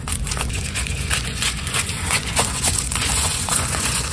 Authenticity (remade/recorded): remade